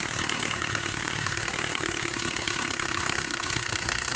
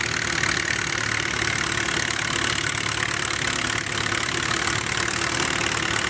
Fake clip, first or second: first